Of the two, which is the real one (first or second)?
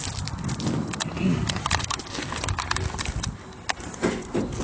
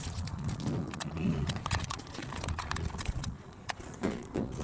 first